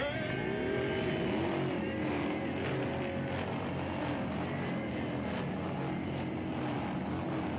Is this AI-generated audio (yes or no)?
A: no